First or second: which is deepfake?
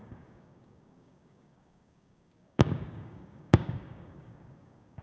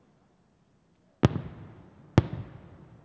first